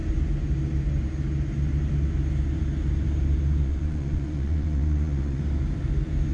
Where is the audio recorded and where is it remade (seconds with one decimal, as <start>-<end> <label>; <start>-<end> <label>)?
0.0-3.6 recorded; 3.6-5.4 remade; 5.4-6.3 recorded